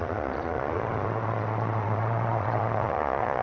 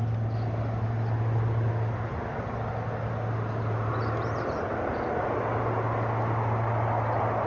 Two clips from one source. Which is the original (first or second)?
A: second